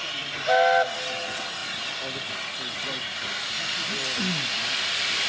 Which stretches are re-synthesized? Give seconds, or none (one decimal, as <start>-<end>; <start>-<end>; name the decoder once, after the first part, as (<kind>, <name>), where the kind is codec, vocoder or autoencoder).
none